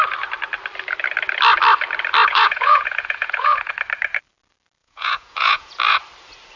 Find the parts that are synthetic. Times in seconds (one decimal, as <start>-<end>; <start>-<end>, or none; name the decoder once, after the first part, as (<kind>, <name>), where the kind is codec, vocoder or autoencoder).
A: 2.3-3.7 (vocoder, Vocos); 4.8-5.8

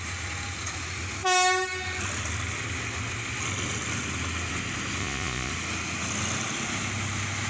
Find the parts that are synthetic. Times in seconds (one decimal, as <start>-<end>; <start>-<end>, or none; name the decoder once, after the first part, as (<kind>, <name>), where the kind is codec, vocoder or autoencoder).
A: 5.0-5.5 (vocoder, Vocos)

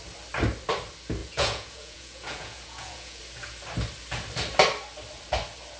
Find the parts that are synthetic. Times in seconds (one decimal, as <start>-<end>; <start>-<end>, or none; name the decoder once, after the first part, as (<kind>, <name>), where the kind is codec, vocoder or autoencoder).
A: 1.2-3.2 (vocoder, Vocos)